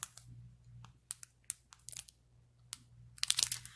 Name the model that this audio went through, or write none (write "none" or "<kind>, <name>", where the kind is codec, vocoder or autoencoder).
none